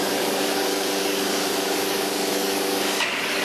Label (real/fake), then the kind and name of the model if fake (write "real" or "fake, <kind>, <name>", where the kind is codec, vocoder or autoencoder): fake, codec, DAC